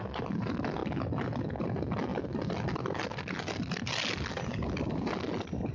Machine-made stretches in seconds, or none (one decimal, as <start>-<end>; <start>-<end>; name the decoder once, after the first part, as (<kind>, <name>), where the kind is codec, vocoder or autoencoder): none